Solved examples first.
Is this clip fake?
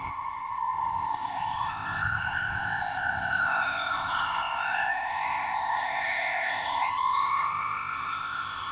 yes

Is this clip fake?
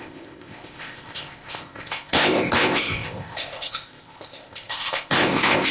yes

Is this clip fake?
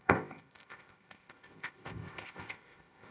yes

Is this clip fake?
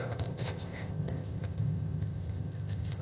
yes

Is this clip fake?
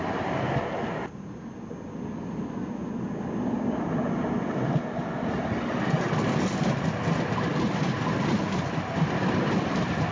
no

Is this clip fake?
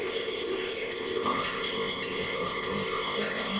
yes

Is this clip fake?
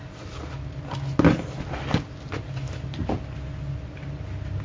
no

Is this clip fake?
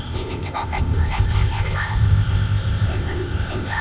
yes